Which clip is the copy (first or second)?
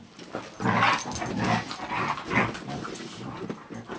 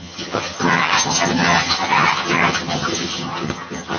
second